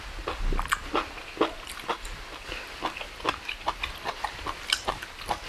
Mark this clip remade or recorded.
recorded